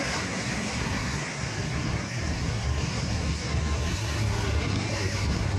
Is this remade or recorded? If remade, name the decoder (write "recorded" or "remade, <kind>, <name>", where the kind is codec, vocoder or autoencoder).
remade, codec, SNAC